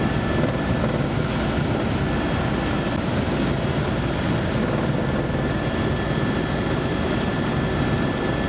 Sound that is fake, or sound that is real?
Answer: real